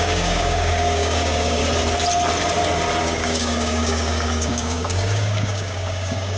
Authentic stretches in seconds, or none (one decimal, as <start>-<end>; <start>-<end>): 1.6-3.0